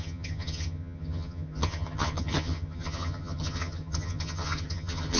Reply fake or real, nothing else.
fake